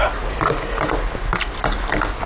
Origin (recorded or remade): recorded